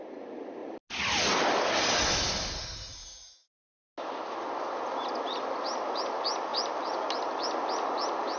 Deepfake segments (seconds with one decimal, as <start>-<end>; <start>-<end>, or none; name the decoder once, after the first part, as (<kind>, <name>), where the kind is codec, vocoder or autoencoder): none